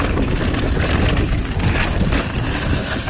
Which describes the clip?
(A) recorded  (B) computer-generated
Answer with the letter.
A